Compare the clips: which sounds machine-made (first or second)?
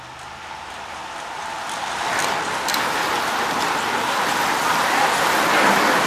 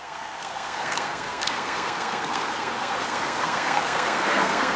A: second